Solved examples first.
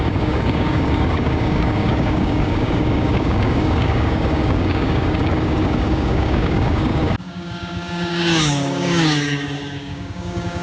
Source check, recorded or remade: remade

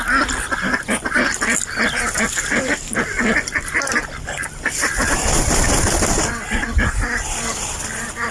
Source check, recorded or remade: recorded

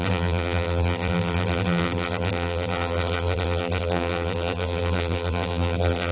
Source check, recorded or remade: remade